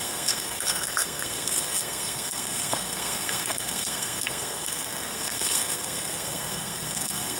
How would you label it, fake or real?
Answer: fake